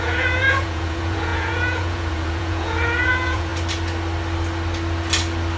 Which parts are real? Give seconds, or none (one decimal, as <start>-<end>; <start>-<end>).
3.5-5.6